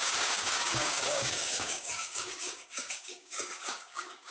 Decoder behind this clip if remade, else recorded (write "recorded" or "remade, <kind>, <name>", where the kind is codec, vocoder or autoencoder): remade, codec, DAC